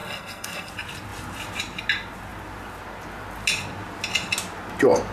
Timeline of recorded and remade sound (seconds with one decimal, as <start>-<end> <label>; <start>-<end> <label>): 0.0-0.7 remade; 0.7-5.1 recorded